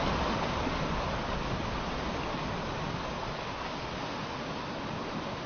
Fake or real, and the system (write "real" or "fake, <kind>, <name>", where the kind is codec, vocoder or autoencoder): real